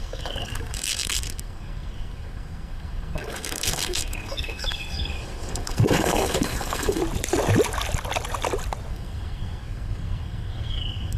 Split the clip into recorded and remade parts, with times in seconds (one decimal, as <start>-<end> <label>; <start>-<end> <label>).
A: 0.0-7.0 remade; 7.0-8.9 recorded; 8.9-11.2 remade